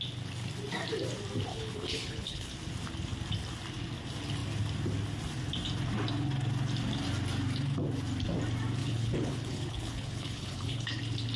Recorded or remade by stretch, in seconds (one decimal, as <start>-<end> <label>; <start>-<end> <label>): 0.0-1.5 recorded; 1.5-2.5 remade; 2.5-8.8 recorded; 8.8-11.0 remade; 11.0-11.4 recorded